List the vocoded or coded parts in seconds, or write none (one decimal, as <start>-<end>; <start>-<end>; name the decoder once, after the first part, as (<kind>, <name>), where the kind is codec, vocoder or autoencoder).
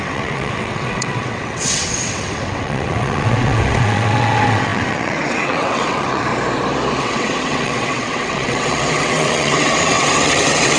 0.0-6.3 (vocoder, WaveNeXt); 7.0-10.8